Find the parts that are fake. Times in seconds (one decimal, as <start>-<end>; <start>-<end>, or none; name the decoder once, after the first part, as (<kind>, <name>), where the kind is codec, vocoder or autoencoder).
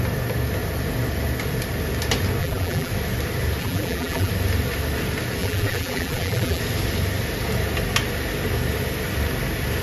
2.4-2.9 (vocoder, BigVGAN v2); 3.6-4.3; 5.4-6.6